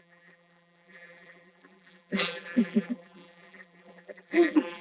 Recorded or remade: remade